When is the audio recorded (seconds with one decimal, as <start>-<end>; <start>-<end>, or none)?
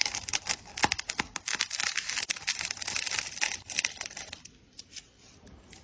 0.9-1.5; 5.0-5.8